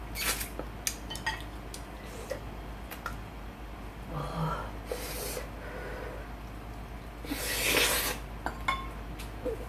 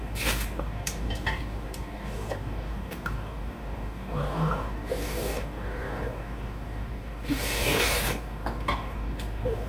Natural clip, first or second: first